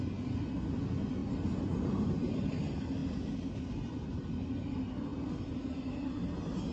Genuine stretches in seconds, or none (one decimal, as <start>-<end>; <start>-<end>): 0.0-6.7